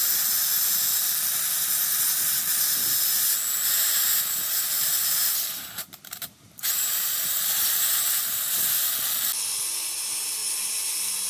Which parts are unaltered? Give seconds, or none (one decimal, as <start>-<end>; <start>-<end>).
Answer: 0.0-4.1; 8.5-11.3